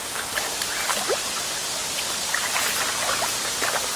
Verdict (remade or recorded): recorded